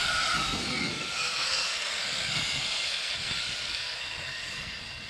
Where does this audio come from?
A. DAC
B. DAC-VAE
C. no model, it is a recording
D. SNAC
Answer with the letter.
D